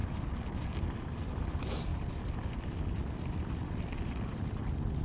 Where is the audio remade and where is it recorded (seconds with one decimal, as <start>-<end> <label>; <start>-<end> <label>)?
0.0-5.0 recorded